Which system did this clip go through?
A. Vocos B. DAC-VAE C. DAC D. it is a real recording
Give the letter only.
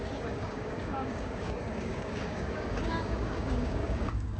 C